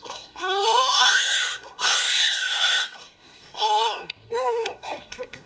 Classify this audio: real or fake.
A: fake